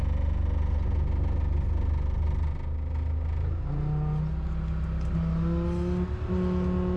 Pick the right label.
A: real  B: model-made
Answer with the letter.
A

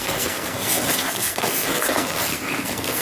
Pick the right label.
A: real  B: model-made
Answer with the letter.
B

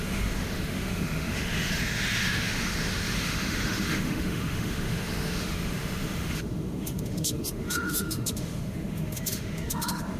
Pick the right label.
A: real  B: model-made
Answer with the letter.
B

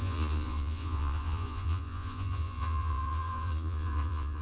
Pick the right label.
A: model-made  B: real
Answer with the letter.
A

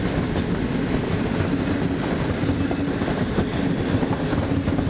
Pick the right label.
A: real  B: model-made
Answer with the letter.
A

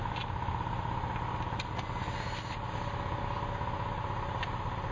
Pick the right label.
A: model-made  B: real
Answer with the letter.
B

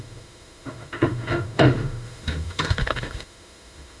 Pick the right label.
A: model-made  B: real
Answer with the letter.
A